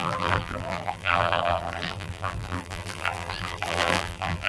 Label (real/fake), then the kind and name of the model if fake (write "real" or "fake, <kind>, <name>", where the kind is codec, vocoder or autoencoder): fake, vocoder, BigVGAN v2